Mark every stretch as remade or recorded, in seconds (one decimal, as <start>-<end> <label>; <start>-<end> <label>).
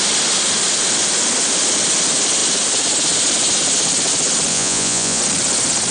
0.0-4.5 recorded; 4.5-5.2 remade; 5.2-5.9 recorded